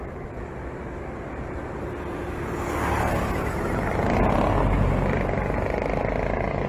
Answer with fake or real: real